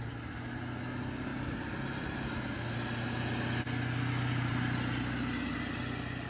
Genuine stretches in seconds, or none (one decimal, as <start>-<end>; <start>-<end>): 0.0-6.3